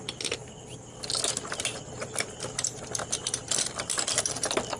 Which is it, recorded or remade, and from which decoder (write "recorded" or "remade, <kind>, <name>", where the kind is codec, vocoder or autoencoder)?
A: remade, vocoder, BigVGAN v2